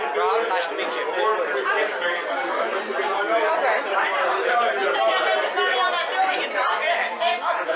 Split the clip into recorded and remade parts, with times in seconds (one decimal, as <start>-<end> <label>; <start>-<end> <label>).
0.0-1.3 recorded; 1.3-4.7 remade; 4.7-7.8 recorded